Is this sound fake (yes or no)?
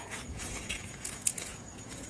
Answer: yes